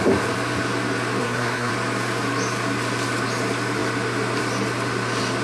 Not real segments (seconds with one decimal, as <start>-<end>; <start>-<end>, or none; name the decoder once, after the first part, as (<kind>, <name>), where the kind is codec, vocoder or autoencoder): 1.2-1.7 (codec, SNAC)